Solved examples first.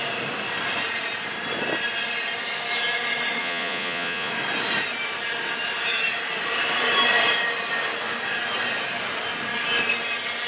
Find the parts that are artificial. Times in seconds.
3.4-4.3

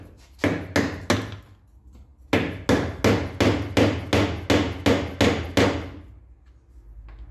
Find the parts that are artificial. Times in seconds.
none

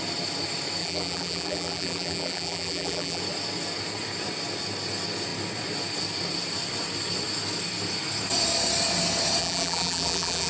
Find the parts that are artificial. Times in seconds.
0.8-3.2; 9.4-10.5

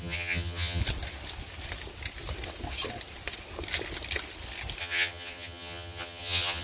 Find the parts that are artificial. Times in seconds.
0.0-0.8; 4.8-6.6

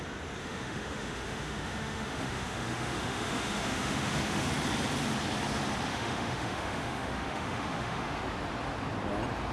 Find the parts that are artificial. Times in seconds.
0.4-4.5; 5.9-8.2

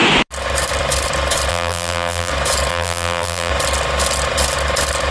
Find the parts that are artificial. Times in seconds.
1.5-2.3; 2.7-3.5

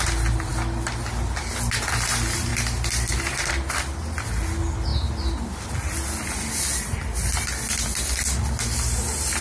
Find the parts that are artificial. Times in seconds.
none